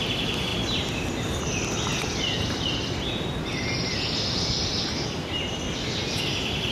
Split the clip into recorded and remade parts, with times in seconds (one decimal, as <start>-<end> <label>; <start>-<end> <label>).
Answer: 0.0-6.7 recorded